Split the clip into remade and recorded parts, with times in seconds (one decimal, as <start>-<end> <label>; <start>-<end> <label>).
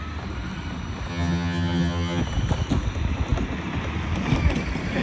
0.0-1.1 recorded; 1.1-2.2 remade; 2.2-5.0 recorded